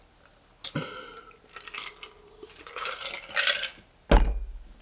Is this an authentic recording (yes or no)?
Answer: yes